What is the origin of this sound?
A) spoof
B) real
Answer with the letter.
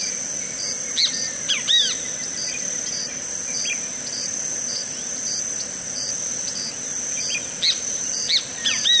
B